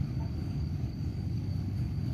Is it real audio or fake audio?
fake